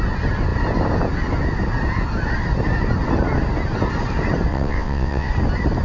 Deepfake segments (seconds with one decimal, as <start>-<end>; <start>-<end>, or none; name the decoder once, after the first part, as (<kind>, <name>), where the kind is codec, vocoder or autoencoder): 4.5-5.3 (vocoder, WaveNeXt)